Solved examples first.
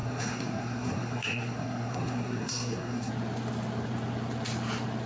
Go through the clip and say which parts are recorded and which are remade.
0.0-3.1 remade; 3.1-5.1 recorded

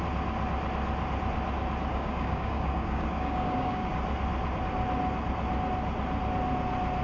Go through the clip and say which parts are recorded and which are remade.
0.0-1.9 recorded; 1.9-3.9 remade; 3.9-7.0 recorded

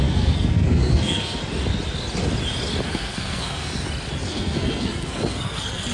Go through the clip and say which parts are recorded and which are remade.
0.0-1.4 remade; 1.4-2.9 recorded; 2.9-3.7 remade; 3.7-4.2 recorded; 4.2-5.9 remade

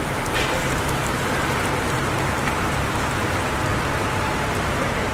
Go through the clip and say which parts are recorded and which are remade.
0.0-2.0 remade; 2.0-4.0 recorded; 4.0-4.5 remade; 4.5-5.1 recorded

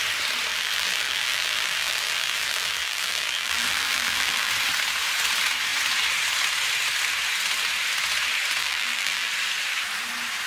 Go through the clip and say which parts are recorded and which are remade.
0.0-0.5 recorded; 0.5-4.5 remade; 4.5-8.6 recorded; 8.6-9.3 remade; 9.3-10.5 recorded